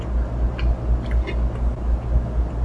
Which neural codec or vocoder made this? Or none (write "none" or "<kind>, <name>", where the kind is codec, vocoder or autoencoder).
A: none